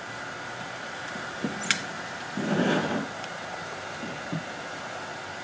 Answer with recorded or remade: recorded